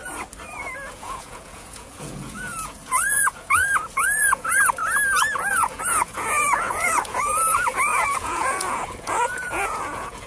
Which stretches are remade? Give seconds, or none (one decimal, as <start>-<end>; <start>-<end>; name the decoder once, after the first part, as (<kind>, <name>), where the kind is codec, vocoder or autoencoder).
0.9-4.8 (vocoder, Vocos); 5.5-10.3